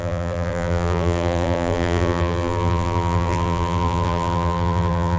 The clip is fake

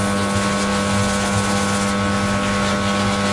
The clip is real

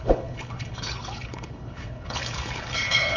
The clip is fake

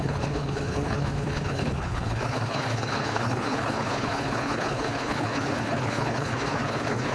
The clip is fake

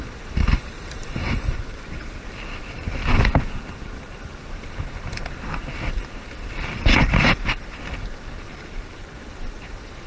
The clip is real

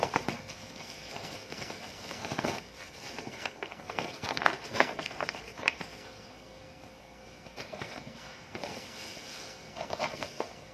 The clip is fake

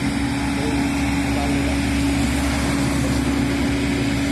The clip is real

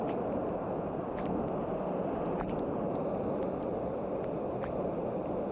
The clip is real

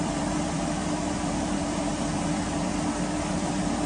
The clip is fake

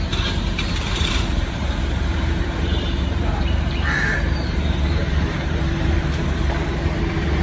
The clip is fake